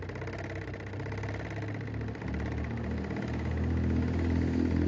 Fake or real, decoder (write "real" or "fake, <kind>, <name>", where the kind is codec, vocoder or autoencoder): real